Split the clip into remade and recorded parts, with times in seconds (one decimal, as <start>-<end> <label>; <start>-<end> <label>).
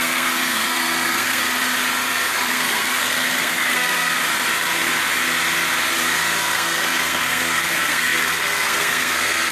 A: 0.0-1.4 remade; 1.4-2.5 recorded; 2.5-4.2 remade; 4.2-6.5 recorded; 6.5-9.5 remade